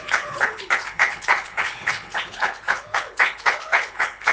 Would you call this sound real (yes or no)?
no